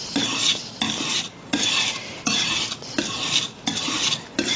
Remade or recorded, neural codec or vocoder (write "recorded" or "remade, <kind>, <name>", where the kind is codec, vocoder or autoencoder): remade, vocoder, BigVGAN v2